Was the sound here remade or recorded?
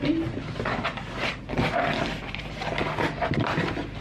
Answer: recorded